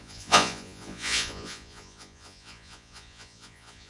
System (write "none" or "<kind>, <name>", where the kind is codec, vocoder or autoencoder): vocoder, Vocos